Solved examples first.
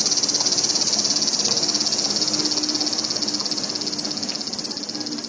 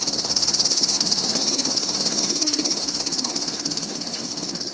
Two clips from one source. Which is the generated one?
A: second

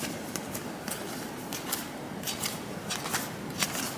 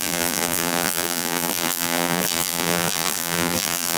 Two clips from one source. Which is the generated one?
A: second